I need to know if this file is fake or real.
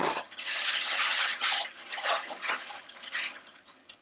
fake